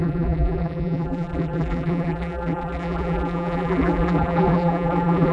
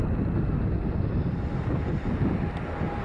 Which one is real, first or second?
second